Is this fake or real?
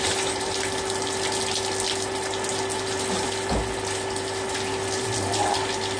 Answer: real